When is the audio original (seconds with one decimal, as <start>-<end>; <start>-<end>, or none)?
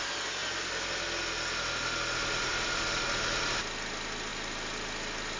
0.0-5.4